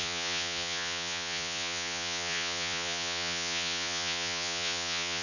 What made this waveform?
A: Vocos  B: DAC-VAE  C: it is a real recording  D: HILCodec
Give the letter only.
A